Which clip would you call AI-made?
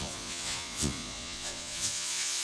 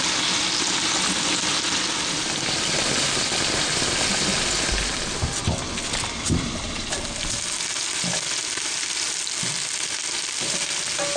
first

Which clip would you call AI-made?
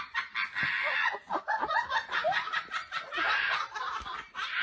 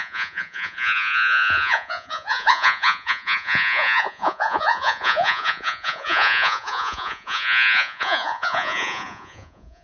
second